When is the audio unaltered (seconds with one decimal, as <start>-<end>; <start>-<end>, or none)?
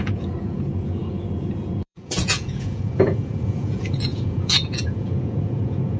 none